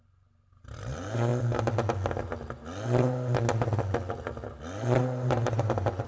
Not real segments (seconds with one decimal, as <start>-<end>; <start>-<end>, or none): 0.0-1.3; 5.0-6.1

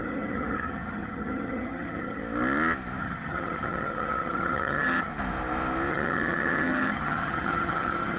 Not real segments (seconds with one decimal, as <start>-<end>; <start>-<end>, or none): 0.0-2.2; 3.0-5.1; 5.9-8.2

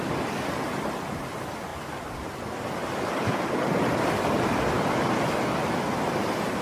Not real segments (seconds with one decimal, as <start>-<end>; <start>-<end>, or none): none

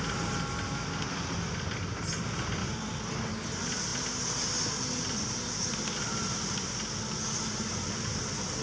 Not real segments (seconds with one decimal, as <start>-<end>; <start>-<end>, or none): 2.6-3.3